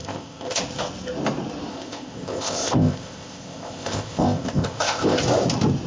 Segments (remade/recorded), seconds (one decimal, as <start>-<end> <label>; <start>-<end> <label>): 0.0-0.6 remade; 0.6-1.7 recorded; 1.7-5.2 remade; 5.2-5.9 recorded